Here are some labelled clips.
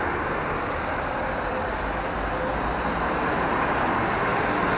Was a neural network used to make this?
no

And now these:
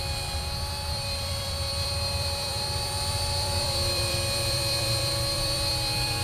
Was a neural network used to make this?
yes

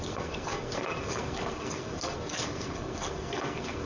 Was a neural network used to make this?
yes